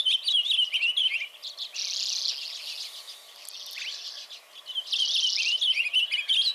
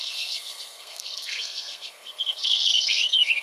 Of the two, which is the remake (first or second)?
second